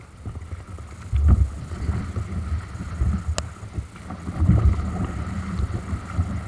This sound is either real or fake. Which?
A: real